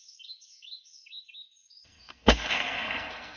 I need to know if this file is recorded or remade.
remade